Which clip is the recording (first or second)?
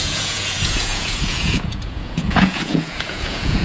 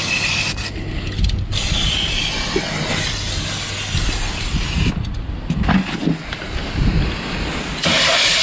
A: second